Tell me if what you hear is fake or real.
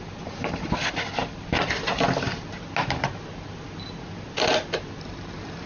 real